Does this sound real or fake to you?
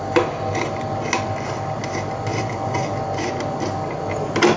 real